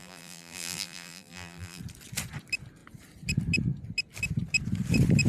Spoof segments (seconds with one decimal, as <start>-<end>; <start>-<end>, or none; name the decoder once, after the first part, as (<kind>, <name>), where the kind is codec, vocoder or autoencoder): 0.0-1.8 (vocoder, BigVGAN v2)